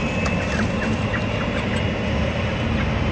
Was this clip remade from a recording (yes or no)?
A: no